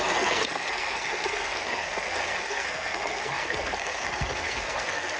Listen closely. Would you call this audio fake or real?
fake